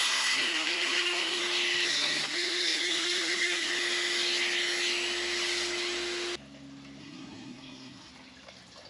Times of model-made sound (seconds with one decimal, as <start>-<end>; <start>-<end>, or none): 0.0-1.4; 1.9-3.7; 7.0-8.1